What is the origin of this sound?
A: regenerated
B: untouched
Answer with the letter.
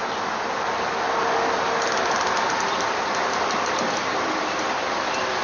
B